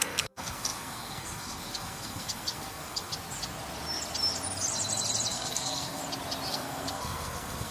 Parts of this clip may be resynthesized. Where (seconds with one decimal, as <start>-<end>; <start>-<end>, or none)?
0.0-3.1; 5.3-6.0; 6.5-7.7